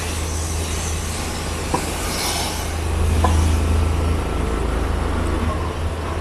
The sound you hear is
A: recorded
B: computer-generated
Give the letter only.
A